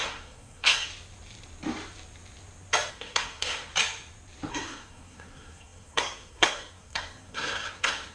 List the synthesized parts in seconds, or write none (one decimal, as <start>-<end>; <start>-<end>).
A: 0.0-0.9; 2.9-3.7; 4.5-8.1